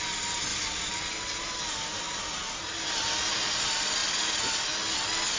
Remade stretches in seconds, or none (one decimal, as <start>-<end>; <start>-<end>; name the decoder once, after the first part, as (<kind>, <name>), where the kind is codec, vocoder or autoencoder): none